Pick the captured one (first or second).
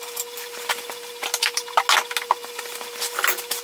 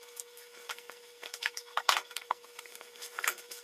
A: first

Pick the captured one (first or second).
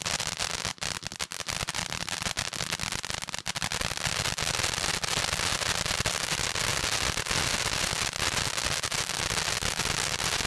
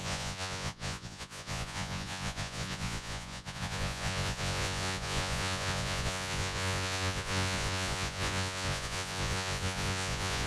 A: first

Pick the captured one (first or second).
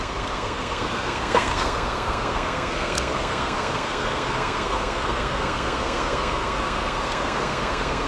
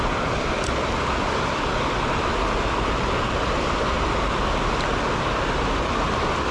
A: second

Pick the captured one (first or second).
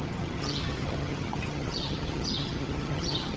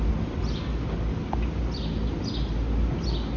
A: second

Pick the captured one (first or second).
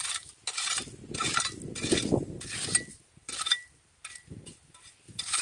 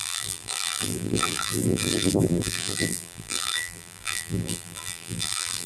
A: first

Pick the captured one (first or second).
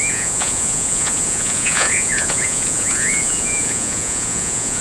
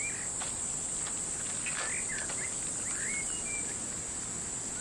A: second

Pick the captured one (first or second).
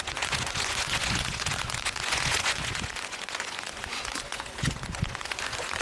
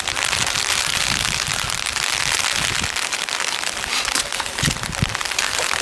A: second